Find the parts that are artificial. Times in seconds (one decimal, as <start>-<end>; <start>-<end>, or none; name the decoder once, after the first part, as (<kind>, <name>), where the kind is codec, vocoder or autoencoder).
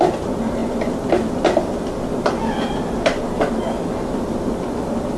none